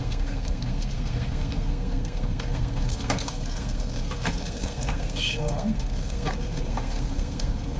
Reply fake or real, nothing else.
fake